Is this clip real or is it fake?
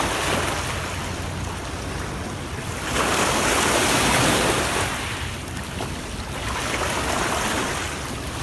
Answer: real